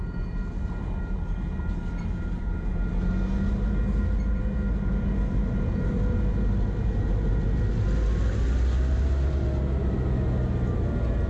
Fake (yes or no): no